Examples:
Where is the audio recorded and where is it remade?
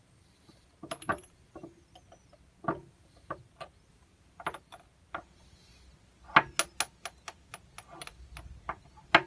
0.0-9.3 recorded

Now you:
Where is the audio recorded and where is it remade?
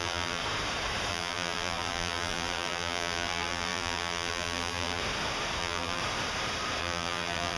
0.0-0.4 remade; 0.4-1.1 recorded; 1.1-5.0 remade; 5.0-5.6 recorded; 5.6-6.0 remade; 6.0-6.8 recorded; 6.8-7.6 remade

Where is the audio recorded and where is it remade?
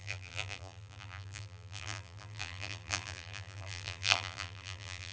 0.0-5.1 remade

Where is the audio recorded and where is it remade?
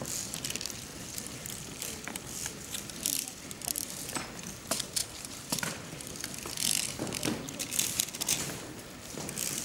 0.0-0.9 recorded; 0.9-3.9 remade; 3.9-5.0 recorded; 5.0-6.1 remade; 6.1-9.6 recorded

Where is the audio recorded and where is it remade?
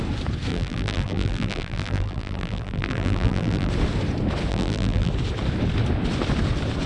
0.0-0.5 recorded; 0.5-3.7 remade; 3.7-4.5 recorded; 4.5-5.1 remade; 5.1-6.9 recorded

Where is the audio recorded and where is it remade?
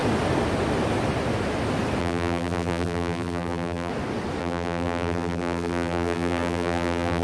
0.0-2.0 recorded; 2.0-3.9 remade; 3.9-4.4 recorded; 4.4-7.2 remade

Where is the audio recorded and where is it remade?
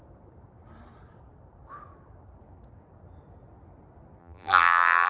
0.0-4.2 recorded; 4.2-5.1 remade